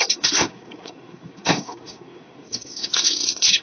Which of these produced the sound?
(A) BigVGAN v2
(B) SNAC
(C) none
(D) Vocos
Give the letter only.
B